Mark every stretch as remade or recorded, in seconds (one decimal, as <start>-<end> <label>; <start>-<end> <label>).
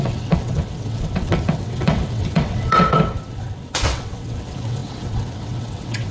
0.0-6.1 remade